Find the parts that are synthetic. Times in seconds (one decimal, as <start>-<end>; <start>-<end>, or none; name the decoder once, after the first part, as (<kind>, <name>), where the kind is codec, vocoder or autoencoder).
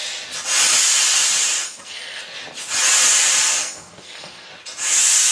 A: 1.6-2.2 (codec, SNAC); 3.6-4.5